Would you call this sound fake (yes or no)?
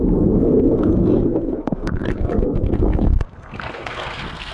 yes